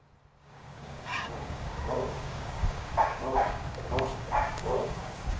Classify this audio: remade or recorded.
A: remade